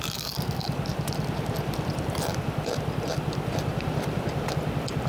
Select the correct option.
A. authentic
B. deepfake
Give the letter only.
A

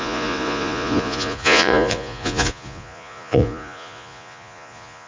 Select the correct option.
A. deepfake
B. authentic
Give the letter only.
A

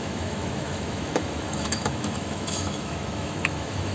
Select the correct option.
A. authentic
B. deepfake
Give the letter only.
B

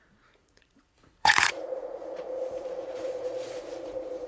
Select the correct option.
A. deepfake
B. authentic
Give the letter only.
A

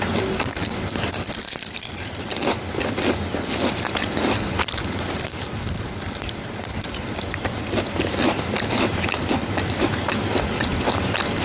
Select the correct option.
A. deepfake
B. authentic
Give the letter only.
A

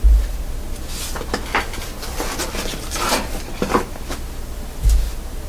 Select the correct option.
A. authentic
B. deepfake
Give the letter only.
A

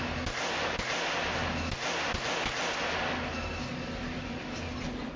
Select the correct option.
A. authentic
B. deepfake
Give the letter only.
A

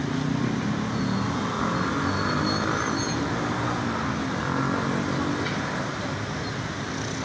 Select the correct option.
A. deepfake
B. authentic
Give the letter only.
B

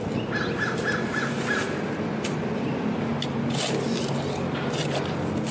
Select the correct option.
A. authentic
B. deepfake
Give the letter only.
A